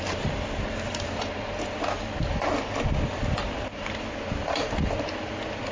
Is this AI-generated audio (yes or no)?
no